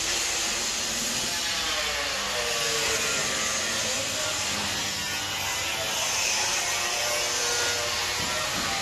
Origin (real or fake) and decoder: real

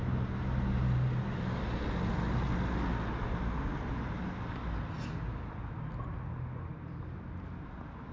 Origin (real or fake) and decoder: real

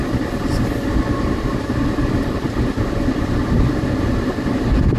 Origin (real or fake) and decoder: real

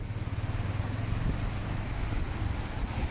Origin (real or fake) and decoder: real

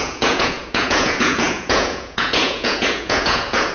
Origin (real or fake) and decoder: fake, vocoder, Vocos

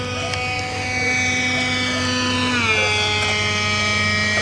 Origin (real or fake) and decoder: real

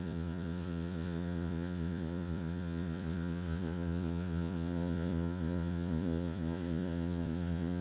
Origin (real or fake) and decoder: fake, vocoder, Vocos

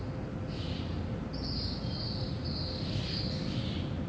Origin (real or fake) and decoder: real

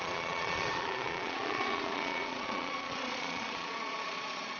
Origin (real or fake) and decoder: fake, vocoder, Vocos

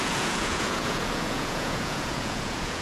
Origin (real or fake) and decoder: fake, vocoder, Vocos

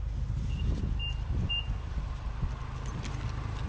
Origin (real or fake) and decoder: real